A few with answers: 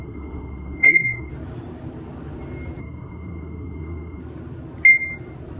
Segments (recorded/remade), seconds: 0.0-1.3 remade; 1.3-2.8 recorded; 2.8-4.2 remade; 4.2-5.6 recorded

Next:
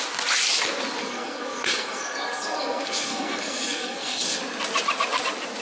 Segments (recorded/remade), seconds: 0.0-1.0 recorded; 1.0-4.4 remade; 4.4-5.6 recorded